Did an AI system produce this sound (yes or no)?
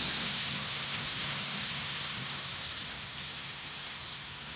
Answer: yes